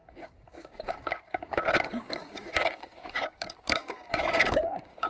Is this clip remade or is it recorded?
remade